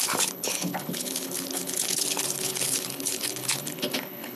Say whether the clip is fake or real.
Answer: fake